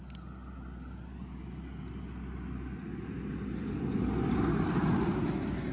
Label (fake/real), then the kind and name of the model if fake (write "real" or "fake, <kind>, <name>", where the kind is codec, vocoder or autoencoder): real